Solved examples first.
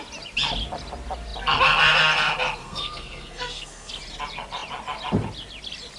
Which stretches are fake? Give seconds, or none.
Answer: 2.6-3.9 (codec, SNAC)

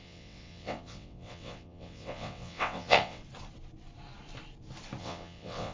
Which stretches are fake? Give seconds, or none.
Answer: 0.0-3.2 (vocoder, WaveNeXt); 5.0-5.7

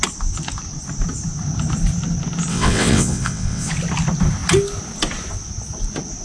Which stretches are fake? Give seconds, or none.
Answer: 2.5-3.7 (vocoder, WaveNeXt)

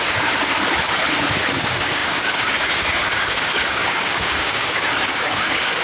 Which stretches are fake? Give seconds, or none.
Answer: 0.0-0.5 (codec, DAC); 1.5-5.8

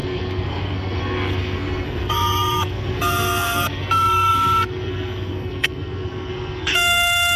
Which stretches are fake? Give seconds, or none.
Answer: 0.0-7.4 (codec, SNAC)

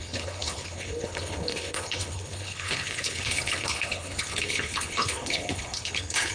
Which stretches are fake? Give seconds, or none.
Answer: 0.0-6.3 (codec, HILCodec)

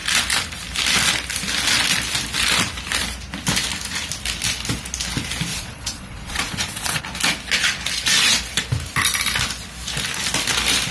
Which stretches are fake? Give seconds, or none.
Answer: 5.5-7.0 (vocoder, Vocos)